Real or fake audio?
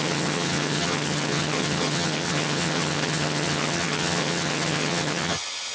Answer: fake